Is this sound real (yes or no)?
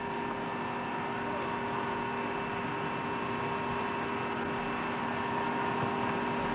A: yes